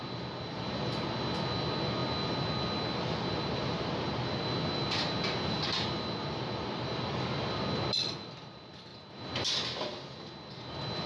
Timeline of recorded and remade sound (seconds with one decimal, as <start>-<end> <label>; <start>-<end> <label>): 0.0-11.1 recorded